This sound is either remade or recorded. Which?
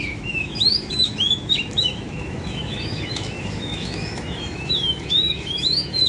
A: remade